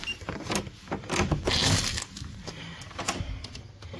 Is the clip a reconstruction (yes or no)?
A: no